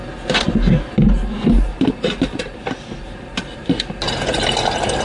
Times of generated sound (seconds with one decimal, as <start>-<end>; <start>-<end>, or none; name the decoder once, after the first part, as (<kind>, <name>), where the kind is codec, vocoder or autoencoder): none